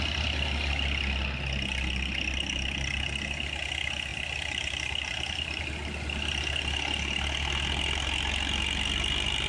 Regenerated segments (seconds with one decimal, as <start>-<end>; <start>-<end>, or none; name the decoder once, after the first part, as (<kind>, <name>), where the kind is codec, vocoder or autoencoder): 4.1-5.6 (vocoder, BigVGAN v2)